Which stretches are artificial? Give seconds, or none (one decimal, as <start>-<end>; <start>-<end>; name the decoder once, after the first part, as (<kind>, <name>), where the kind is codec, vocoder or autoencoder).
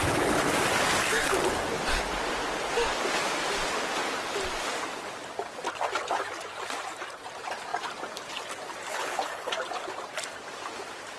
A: 8.9-9.5 (codec, HILCodec)